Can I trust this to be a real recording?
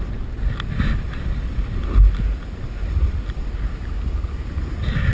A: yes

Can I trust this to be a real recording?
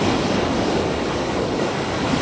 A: no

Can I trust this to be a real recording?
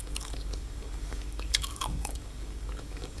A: no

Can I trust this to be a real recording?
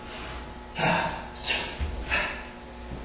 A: yes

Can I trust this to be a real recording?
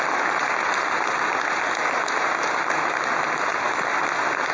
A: yes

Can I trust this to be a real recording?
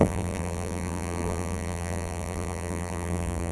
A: no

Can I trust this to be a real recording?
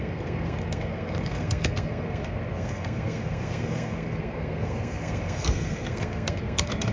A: no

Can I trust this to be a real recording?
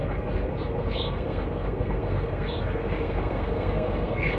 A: no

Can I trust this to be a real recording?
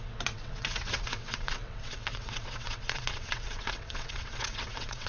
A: no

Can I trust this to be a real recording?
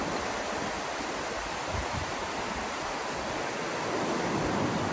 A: yes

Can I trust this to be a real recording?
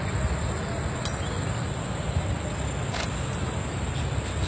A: yes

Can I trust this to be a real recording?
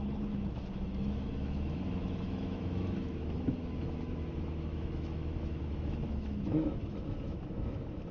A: no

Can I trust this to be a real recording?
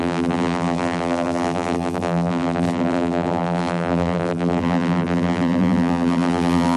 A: no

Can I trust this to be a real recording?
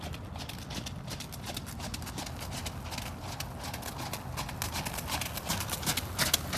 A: yes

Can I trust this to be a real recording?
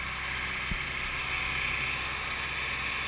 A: yes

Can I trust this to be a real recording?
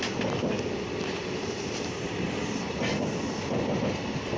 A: yes